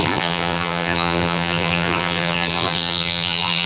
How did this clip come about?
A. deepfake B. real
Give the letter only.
A